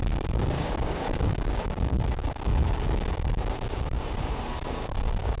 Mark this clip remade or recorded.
remade